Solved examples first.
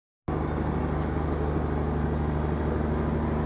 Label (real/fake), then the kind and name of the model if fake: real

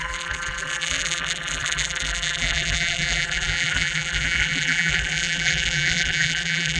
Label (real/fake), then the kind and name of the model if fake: fake, vocoder, BigVGAN v2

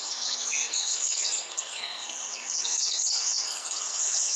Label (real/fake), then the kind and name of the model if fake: fake, codec, SNAC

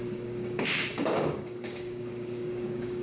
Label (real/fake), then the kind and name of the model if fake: fake, codec, DAC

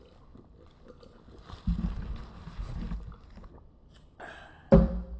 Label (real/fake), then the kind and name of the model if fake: real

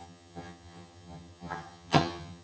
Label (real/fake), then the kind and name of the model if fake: fake, vocoder, HiFi-GAN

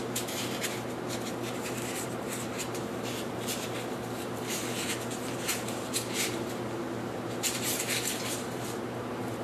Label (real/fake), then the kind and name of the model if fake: fake, vocoder, BigVGAN v2